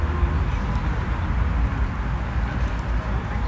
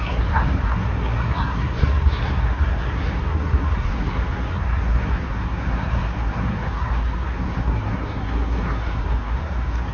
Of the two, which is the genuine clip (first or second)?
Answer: first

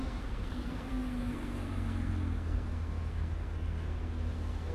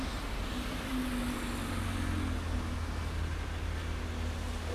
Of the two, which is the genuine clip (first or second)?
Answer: second